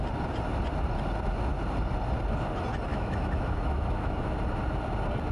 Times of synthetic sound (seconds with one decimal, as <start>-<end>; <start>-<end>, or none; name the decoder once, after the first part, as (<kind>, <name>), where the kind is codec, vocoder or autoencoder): 2.9-4.3 (autoencoder, DAC-VAE)